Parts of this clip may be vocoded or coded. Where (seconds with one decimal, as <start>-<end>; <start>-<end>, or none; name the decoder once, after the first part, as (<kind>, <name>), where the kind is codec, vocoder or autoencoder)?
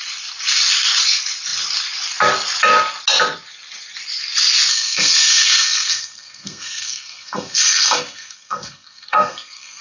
4.7-9.8 (codec, SNAC)